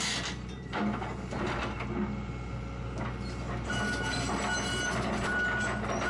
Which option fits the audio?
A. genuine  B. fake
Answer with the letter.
A